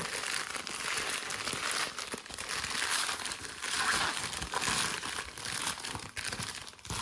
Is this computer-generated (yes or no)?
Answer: no